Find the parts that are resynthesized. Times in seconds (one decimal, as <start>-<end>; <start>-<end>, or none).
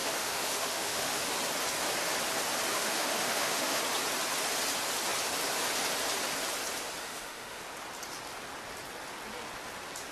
0.0-1.3; 2.7-3.8; 7.0-7.6